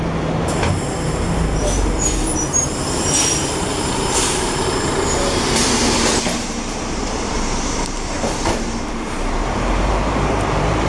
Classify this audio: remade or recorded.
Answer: remade